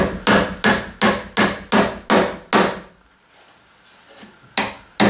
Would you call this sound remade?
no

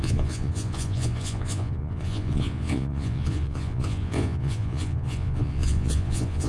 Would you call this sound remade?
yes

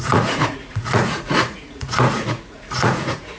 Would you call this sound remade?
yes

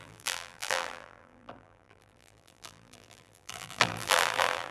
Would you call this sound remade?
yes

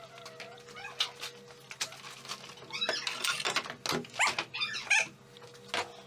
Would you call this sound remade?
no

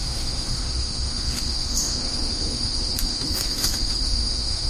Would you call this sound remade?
yes